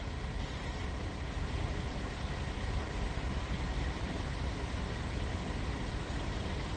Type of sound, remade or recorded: recorded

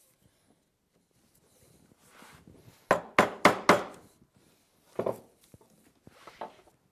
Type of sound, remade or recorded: recorded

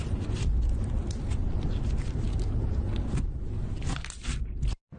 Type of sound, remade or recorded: recorded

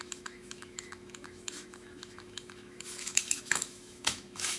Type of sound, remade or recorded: remade